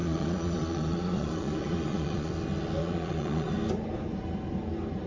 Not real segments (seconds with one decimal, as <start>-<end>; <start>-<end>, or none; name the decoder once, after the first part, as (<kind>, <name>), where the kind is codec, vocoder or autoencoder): 0.0-2.3 (vocoder, Vocos); 2.8-3.5